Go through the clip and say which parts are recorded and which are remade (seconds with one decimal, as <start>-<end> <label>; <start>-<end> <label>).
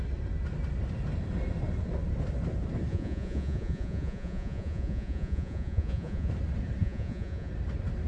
0.0-2.9 recorded; 2.9-6.3 remade; 6.3-6.8 recorded; 6.8-7.5 remade; 7.5-8.1 recorded